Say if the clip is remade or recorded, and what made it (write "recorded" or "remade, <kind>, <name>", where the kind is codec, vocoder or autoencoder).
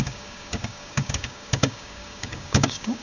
remade, codec, DAC